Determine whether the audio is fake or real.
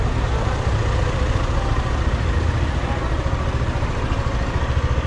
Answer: real